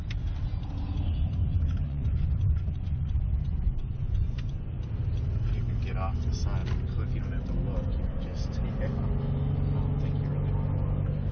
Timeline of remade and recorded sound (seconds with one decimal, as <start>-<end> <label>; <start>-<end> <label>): 0.0-1.4 recorded; 1.4-4.8 remade; 4.8-7.9 recorded; 7.9-8.6 remade; 8.6-11.3 recorded